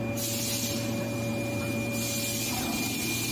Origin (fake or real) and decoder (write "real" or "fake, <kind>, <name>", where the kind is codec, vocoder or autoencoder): real